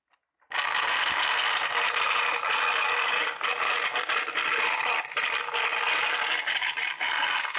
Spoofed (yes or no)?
no